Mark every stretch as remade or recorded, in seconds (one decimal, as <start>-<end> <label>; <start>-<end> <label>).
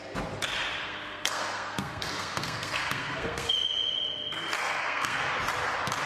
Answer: 0.0-0.8 recorded; 0.8-3.5 remade; 3.5-4.6 recorded; 4.6-5.3 remade; 5.3-6.1 recorded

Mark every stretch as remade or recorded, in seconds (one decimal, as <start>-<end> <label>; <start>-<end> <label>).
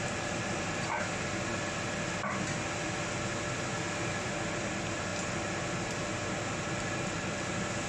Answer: 0.0-7.9 recorded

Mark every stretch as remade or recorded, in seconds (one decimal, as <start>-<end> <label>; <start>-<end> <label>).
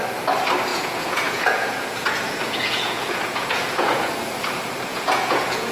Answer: 0.0-0.7 recorded; 0.7-4.1 remade; 4.1-4.9 recorded; 4.9-5.7 remade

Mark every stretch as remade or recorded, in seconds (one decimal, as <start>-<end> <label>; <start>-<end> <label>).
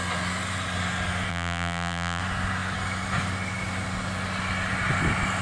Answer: 0.0-1.3 recorded; 1.3-2.2 remade; 2.2-5.4 recorded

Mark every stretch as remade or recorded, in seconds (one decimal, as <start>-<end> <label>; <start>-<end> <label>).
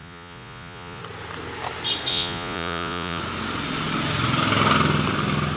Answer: 0.0-1.0 remade; 1.0-2.1 recorded; 2.1-3.2 remade; 3.2-5.6 recorded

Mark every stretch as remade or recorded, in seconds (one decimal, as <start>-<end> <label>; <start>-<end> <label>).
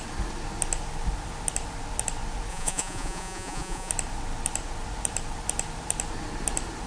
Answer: 0.0-2.5 recorded; 2.5-3.9 remade; 3.9-6.9 recorded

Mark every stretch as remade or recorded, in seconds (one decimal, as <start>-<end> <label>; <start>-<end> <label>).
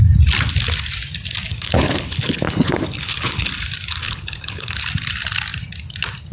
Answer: 0.0-1.5 recorded; 1.5-3.5 remade; 3.5-4.0 recorded; 4.0-4.8 remade; 4.8-6.3 recorded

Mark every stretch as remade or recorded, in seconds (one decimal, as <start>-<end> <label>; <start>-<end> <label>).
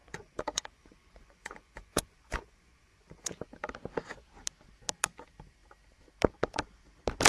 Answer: 0.0-3.4 remade; 3.4-7.3 recorded